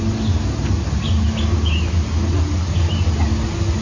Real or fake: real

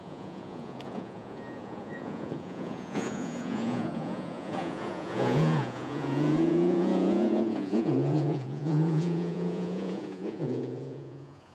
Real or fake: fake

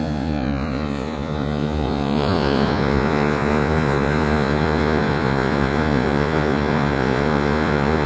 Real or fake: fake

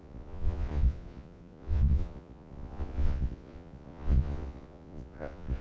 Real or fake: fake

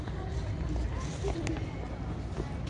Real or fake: real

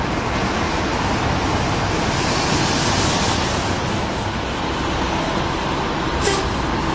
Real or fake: real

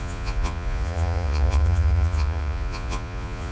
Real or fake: fake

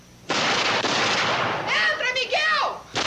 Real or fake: real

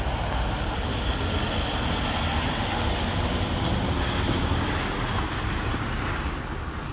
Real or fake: real